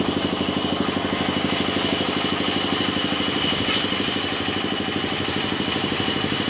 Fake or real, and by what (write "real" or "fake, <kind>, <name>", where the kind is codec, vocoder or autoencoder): real